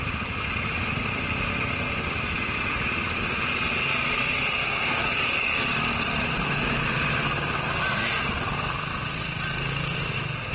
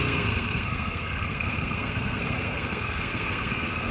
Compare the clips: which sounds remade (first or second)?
second